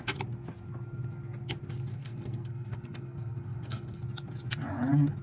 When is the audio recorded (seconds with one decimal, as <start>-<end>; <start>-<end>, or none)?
0.0-1.9; 4.0-5.2